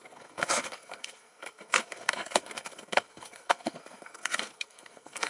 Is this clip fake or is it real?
fake